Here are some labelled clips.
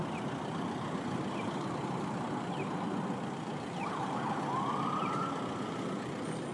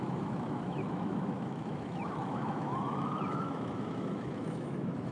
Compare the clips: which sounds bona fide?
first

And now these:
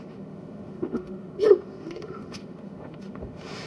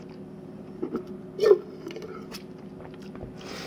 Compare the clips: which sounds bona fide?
second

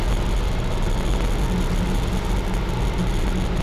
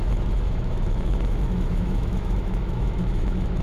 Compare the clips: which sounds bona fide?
first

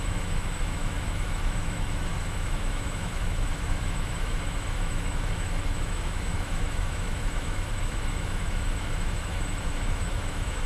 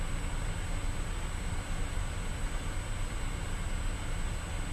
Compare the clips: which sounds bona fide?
second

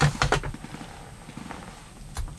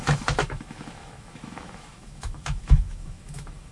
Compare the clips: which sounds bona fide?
first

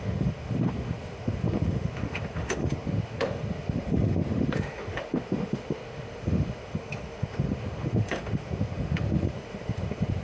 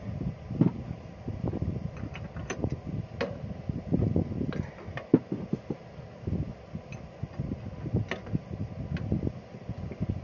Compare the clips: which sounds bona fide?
second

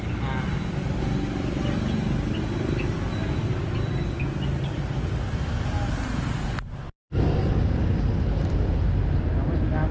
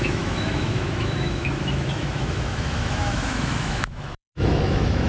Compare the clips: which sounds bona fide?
first